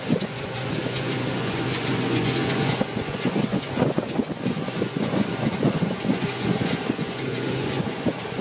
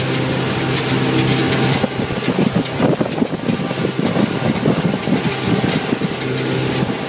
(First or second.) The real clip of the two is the second